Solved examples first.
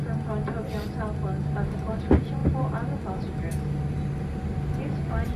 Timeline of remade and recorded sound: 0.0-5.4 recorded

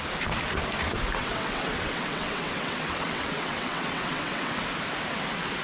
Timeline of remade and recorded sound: 0.0-1.2 recorded; 1.2-4.6 remade; 4.6-5.6 recorded